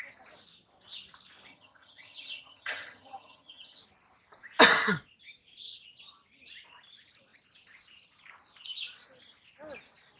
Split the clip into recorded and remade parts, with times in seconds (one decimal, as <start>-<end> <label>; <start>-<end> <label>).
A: 0.0-1.5 recorded; 1.5-3.8 remade; 3.8-10.2 recorded